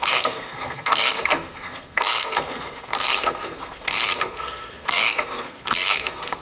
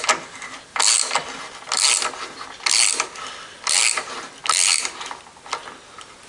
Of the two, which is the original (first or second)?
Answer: second